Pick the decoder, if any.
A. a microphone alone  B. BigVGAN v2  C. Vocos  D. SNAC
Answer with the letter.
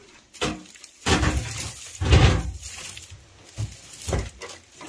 A